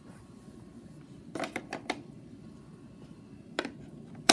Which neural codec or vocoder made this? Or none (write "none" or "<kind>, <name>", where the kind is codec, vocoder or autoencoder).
none